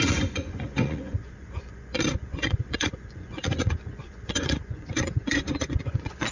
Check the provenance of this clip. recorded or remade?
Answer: remade